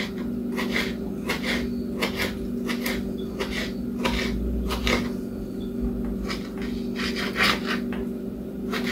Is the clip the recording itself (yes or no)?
yes